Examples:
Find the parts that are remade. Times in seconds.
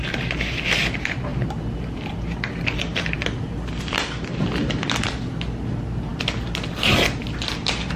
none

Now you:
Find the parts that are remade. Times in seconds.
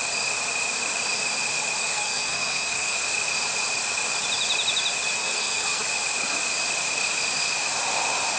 1.8-3.0 (codec, SNAC); 5.2-5.8